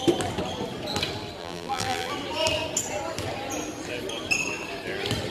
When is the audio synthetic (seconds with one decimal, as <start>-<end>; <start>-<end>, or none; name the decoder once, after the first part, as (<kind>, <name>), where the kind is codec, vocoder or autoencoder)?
1.4-2.1 (vocoder, BigVGAN v2)